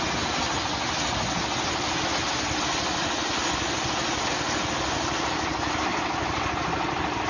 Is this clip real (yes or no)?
yes